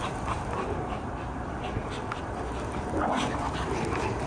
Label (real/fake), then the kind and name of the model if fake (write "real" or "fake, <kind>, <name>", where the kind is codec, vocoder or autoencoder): fake, vocoder, BigVGAN v2